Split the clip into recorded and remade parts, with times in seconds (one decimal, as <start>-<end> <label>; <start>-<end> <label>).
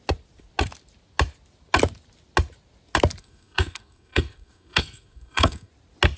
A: 0.0-3.2 recorded; 3.2-5.7 remade; 5.7-6.2 recorded